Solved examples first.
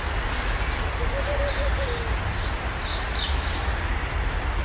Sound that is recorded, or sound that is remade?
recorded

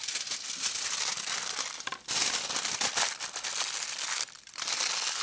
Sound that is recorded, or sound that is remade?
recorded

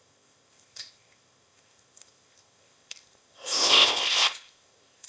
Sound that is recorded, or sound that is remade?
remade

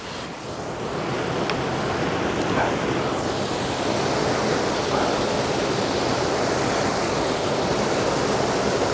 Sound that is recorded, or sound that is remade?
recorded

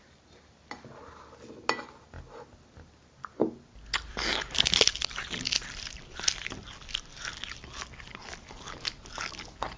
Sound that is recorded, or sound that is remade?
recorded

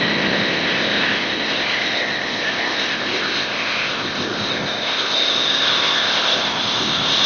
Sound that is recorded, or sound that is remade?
remade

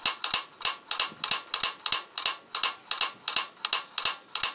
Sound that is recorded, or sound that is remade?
recorded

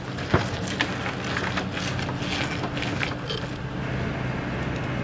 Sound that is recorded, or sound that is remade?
recorded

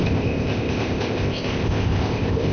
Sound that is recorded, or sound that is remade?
remade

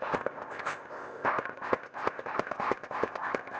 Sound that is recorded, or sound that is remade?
remade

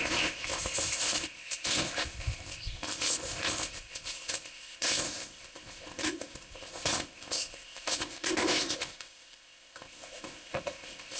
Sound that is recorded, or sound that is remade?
remade